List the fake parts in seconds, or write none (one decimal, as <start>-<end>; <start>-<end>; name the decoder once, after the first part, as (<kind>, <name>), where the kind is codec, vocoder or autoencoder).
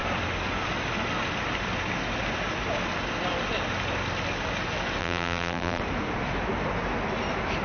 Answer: 5.0-5.8 (vocoder, BigVGAN v2)